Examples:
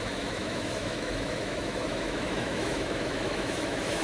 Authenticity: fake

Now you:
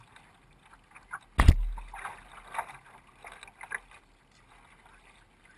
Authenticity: real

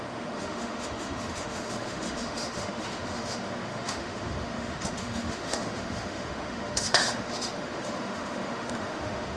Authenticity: fake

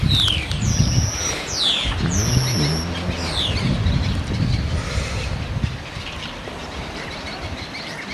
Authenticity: real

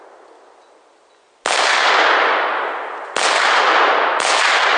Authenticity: real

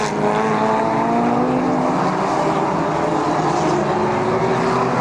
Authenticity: real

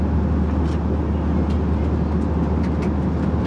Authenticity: real